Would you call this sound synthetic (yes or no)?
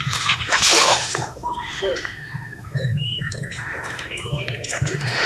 yes